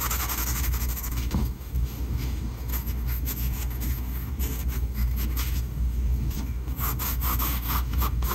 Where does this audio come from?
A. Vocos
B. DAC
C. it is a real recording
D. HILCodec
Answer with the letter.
B